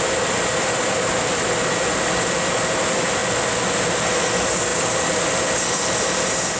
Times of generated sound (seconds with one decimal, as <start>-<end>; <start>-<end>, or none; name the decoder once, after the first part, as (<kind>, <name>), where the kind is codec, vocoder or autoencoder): 4.7-5.3 (vocoder, BigVGAN v2)